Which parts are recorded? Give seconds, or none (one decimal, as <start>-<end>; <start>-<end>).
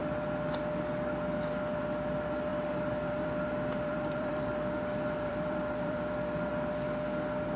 0.0-2.5; 6.5-7.6